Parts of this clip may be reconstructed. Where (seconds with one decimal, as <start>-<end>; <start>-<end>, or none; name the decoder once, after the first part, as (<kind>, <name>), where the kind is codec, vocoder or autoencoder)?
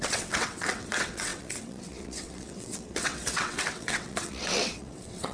0.0-5.3 (vocoder, WaveNeXt)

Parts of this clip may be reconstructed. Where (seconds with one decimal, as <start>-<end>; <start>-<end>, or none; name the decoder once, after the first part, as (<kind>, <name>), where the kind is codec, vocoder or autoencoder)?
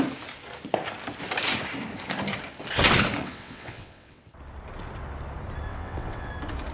3.2-4.2 (vocoder, WaveNeXt); 5.7-6.3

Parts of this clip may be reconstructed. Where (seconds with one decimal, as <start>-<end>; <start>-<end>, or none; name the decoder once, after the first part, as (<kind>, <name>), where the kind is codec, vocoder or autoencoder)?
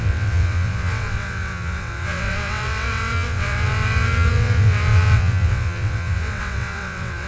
0.0-7.3 (vocoder, WaveNeXt)